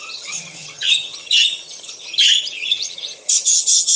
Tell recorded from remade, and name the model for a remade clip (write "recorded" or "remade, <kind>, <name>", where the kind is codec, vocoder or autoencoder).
remade, vocoder, HiFi-GAN